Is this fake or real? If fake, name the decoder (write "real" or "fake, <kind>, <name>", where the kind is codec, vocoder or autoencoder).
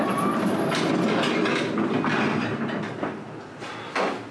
real